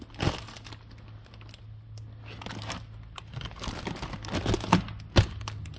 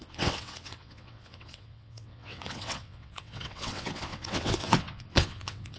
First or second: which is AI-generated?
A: second